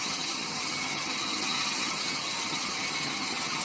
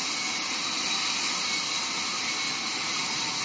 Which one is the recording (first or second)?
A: second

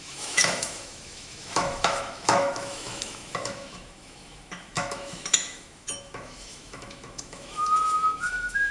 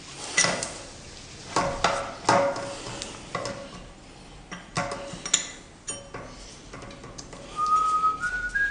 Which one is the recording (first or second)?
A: second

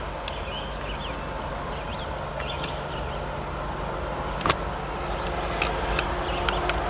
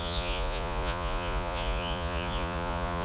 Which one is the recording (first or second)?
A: first